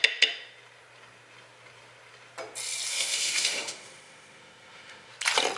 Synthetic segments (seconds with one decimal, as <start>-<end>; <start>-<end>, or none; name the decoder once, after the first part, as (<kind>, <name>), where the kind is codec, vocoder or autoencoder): 2.9-5.1 (autoencoder, DAC-VAE)